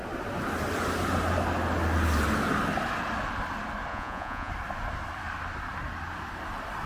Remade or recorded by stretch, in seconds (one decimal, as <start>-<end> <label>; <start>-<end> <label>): 0.0-3.9 recorded; 3.9-4.5 remade; 4.5-6.9 recorded

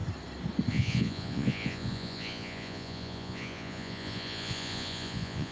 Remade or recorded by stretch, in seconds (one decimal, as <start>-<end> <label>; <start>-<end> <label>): 0.0-0.7 recorded; 0.7-5.5 remade

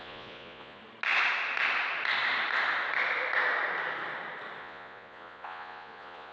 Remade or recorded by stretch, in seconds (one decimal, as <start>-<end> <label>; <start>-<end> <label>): 0.0-0.8 remade; 0.8-4.6 recorded; 4.6-6.3 remade

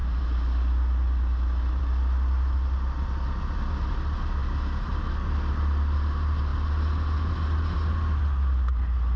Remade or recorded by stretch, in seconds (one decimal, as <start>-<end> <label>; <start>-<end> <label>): 0.0-9.2 recorded